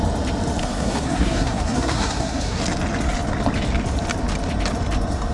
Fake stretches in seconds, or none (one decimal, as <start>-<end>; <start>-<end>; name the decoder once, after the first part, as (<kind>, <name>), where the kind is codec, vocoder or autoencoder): 0.6-2.6 (codec, SNAC)